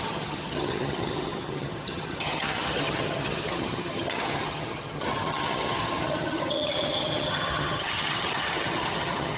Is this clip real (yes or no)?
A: no